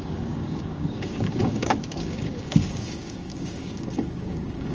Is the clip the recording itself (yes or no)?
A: no